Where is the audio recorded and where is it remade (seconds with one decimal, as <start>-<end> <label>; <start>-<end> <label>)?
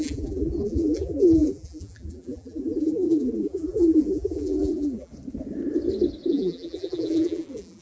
0.0-5.1 remade; 5.1-6.3 recorded; 6.3-7.8 remade